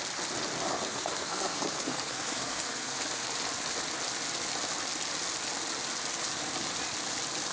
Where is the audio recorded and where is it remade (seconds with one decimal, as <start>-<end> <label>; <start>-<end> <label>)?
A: 0.0-0.7 recorded; 0.7-3.3 remade; 3.3-7.5 recorded